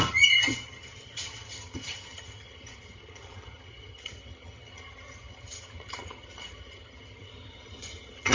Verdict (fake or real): fake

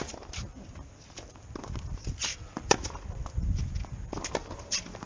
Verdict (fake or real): real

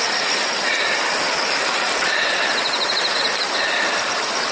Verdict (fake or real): real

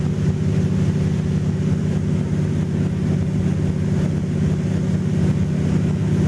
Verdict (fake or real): real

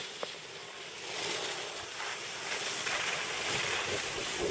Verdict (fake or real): real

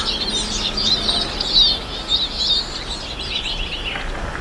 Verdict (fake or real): real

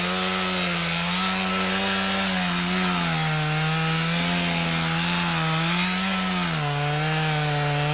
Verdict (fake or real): real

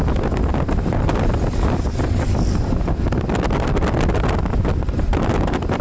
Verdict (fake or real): real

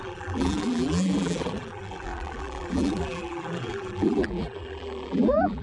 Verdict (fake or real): fake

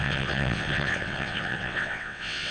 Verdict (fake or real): fake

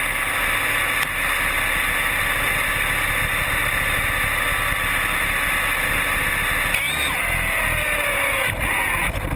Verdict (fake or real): real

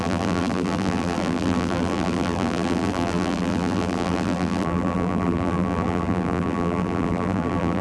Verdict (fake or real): fake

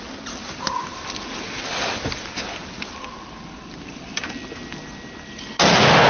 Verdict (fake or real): real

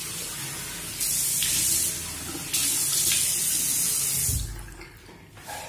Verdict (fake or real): real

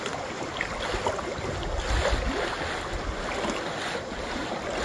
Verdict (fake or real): real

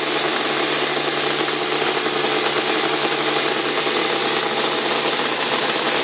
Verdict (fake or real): real